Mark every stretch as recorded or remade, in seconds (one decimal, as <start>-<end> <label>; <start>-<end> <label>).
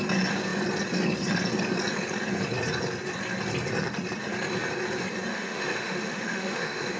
0.0-5.3 recorded; 5.3-7.0 remade